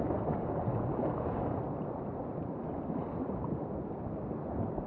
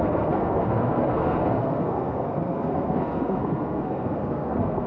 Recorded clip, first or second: first